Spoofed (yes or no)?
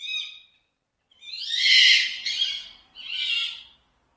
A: no